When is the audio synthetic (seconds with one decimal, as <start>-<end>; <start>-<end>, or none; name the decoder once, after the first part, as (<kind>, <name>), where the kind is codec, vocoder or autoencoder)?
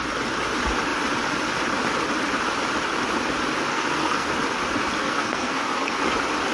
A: 3.7-4.3 (codec, SNAC); 5.0-6.0